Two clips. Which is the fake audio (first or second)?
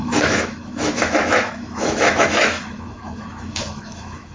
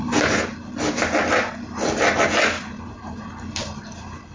first